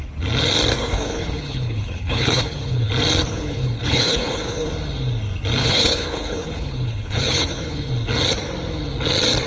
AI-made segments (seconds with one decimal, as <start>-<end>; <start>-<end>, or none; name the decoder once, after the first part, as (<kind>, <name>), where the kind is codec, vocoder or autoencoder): 0.8-2.9 (codec, HILCodec); 3.3-4.7; 5.6-7.9